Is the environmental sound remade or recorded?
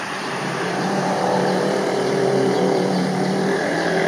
remade